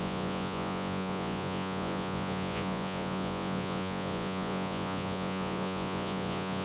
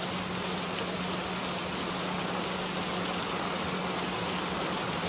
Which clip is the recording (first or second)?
second